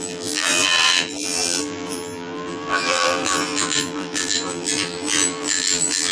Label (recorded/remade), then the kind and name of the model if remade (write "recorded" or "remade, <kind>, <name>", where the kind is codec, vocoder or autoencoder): remade, vocoder, BigVGAN v2